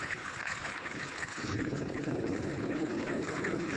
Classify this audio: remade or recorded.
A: remade